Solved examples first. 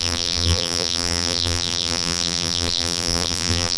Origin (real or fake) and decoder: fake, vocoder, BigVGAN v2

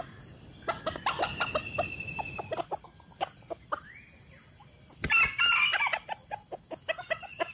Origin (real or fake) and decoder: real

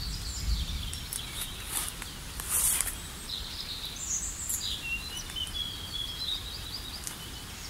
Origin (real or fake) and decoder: real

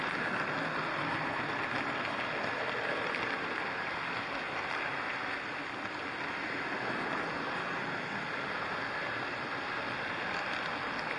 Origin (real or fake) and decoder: real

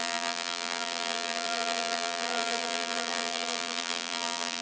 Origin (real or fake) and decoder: fake, vocoder, BigVGAN v2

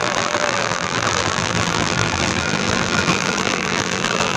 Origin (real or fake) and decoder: fake, vocoder, BigVGAN v2